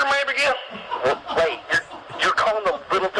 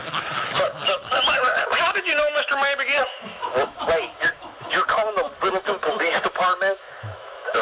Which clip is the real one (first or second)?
first